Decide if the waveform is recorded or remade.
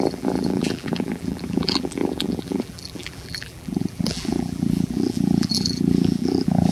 remade